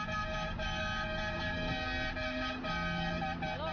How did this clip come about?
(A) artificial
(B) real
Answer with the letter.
B